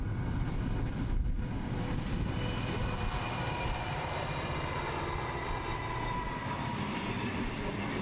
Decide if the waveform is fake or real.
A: real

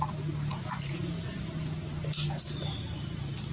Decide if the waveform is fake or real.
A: real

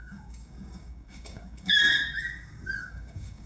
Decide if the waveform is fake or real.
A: fake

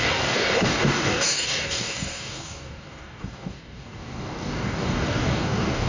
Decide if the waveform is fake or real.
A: fake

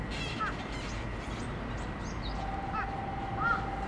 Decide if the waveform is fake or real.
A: real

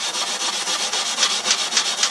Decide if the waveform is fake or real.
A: real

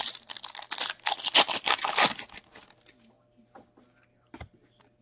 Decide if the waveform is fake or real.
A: real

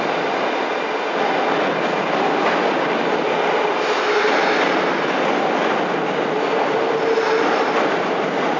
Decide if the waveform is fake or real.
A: real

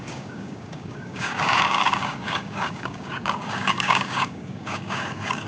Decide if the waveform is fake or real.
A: fake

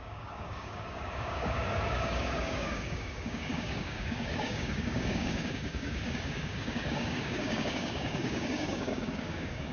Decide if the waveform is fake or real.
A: fake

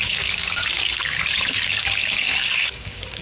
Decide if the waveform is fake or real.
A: fake